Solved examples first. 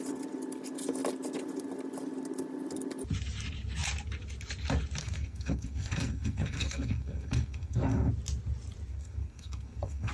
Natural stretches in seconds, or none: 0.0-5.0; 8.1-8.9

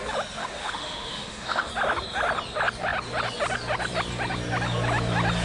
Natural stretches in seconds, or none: 0.0-0.4; 1.7-5.4

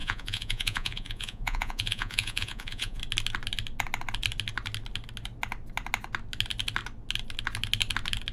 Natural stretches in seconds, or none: 3.0-8.3

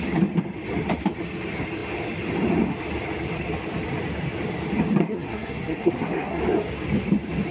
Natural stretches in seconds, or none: 0.0-5.0; 6.4-7.5

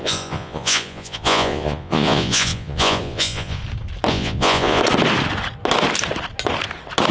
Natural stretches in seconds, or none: 3.6-4.1; 4.8-7.1